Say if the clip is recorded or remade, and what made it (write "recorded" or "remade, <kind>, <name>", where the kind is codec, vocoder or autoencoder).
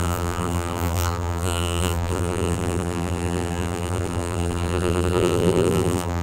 remade, vocoder, BigVGAN v2